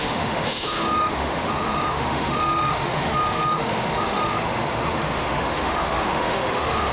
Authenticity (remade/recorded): remade